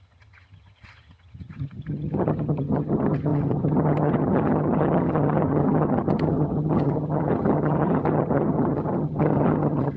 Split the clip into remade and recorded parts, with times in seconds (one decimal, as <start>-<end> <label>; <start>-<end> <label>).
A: 0.0-10.0 remade